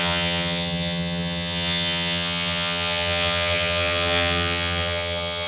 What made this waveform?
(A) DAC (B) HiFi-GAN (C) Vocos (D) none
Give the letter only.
B